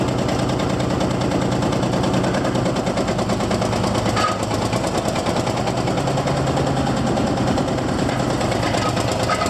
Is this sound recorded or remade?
recorded